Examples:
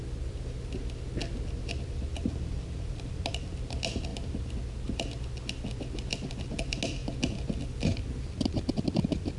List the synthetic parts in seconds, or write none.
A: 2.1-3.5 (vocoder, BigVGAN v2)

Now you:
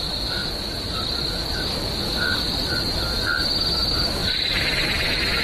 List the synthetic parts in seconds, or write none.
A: 0.4-1.6 (vocoder, BigVGAN v2); 4.2-5.4

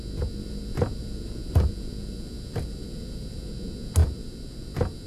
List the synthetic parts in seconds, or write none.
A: 0.4-3.5 (vocoder, BigVGAN v2); 4.0-5.1

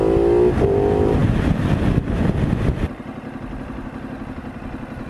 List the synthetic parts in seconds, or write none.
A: none

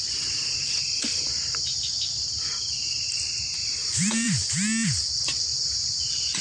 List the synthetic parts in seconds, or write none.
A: 3.6-4.5 (vocoder, BigVGAN v2)

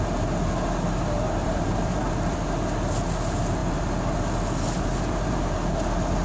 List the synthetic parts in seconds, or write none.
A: 1.4-2.4 (vocoder, BigVGAN v2); 3.6-5.7

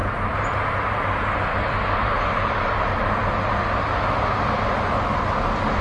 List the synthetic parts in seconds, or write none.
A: 0.0-3.5 (vocoder, BigVGAN v2)